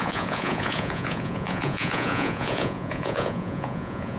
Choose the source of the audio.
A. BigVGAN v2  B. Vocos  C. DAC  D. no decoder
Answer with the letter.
B